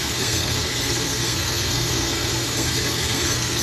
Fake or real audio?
fake